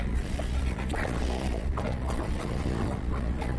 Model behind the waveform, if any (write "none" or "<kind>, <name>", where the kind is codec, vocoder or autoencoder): vocoder, Vocos